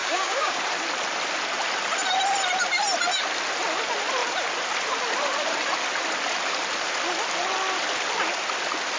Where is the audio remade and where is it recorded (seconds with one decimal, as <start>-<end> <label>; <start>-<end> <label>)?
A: 0.0-0.6 remade; 0.6-9.0 recorded